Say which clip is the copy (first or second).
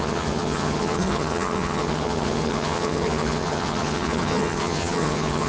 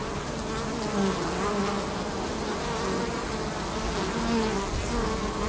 first